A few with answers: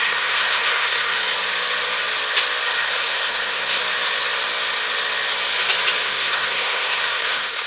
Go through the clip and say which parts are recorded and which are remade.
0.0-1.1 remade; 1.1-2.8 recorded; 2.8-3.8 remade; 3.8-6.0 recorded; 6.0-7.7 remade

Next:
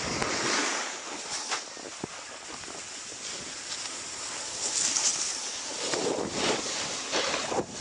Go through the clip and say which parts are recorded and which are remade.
0.0-7.8 recorded

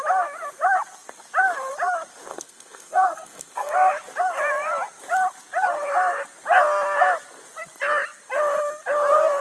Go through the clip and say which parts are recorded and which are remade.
0.0-2.3 recorded; 2.3-3.7 remade; 3.7-9.4 recorded